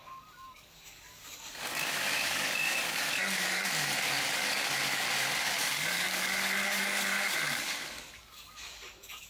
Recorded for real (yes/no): no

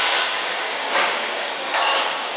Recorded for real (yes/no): no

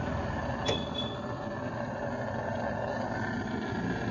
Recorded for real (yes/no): yes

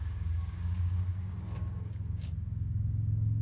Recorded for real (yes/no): no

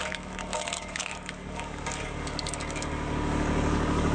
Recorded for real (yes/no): no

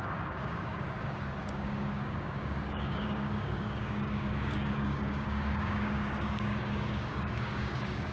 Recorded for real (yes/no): no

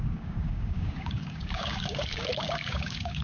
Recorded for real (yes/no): no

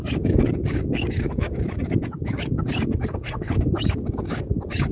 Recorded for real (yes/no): no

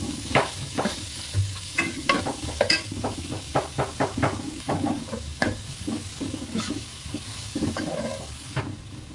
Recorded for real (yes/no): no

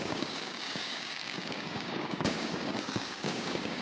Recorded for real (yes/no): no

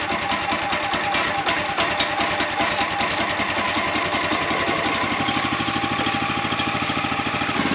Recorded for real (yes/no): yes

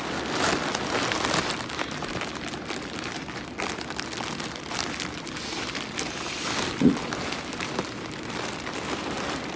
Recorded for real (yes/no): yes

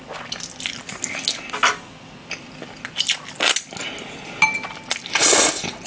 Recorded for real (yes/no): yes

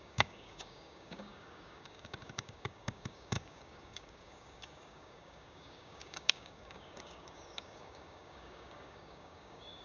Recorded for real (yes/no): no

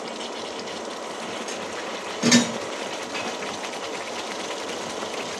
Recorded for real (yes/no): yes